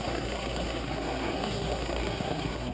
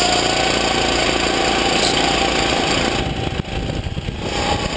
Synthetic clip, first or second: first